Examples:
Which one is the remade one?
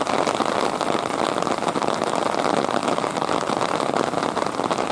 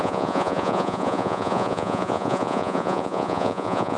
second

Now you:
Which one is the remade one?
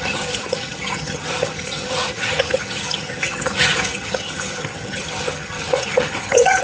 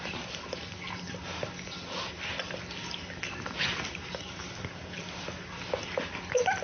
first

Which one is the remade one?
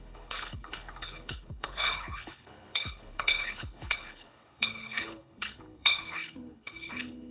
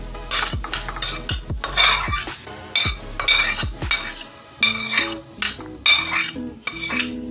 first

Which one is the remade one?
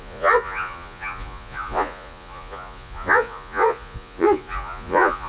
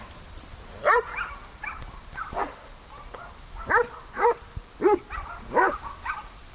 first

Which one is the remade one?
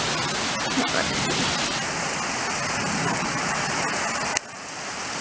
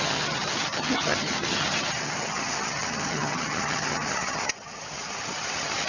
second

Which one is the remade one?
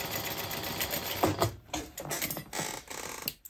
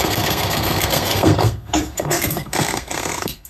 second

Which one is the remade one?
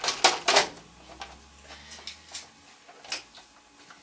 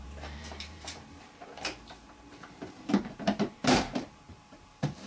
second